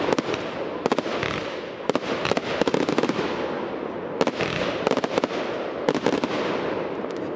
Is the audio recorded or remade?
recorded